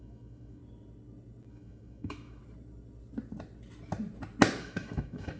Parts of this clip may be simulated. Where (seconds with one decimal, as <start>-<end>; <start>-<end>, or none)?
0.0-0.6; 1.5-2.4; 4.6-5.4